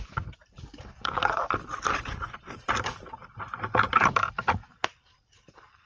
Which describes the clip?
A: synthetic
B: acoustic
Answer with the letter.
A